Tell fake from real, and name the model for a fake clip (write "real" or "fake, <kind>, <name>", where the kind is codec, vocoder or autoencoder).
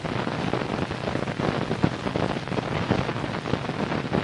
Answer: real